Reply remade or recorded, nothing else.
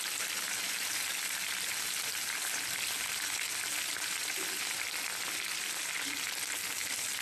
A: recorded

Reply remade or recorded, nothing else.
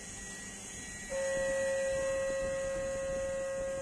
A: recorded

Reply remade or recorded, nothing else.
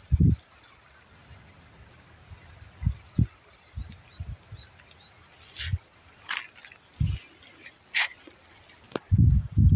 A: recorded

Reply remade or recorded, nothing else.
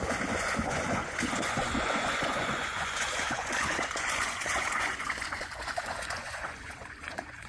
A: remade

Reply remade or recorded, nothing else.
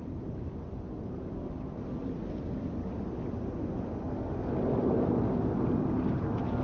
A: recorded